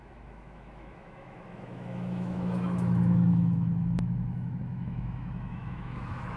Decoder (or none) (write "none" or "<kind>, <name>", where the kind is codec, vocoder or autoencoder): autoencoder, DAC-VAE